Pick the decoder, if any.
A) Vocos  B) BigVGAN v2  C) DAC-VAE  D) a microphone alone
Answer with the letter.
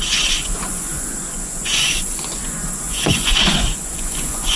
A